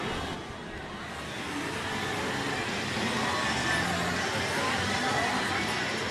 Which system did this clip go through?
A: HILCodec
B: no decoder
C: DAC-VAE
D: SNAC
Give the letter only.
B